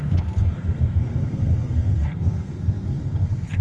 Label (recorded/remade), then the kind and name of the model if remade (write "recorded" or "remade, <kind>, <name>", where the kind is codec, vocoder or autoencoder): remade, codec, SNAC